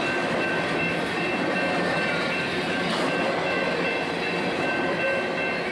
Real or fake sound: fake